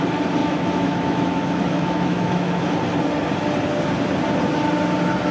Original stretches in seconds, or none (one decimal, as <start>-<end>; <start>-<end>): 0.0-0.4; 2.6-5.3